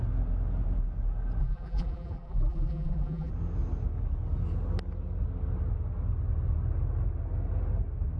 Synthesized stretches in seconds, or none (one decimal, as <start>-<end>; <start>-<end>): 1.4-3.3